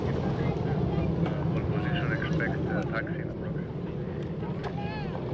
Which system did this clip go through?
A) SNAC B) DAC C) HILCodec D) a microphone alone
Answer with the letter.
D